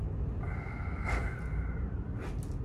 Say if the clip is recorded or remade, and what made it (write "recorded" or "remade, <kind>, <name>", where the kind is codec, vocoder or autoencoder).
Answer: recorded